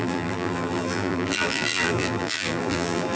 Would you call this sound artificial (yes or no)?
yes